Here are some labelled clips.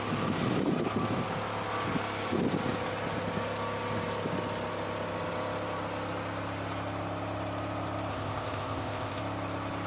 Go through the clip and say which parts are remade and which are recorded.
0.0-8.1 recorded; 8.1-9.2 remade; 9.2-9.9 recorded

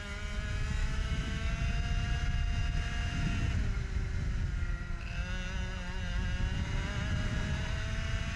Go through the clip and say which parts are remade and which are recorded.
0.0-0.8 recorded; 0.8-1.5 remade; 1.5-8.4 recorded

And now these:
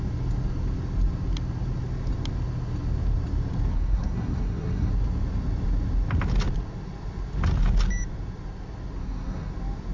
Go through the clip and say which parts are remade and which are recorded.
0.0-3.7 recorded; 3.7-4.9 remade; 4.9-9.0 recorded; 9.0-9.5 remade; 9.5-9.9 recorded